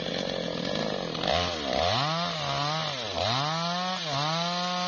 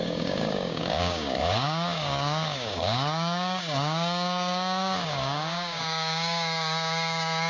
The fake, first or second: second